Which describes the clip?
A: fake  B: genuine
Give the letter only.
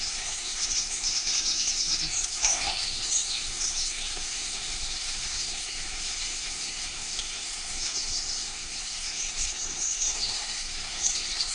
A